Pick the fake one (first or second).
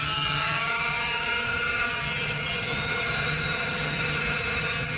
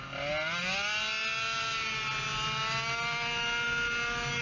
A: first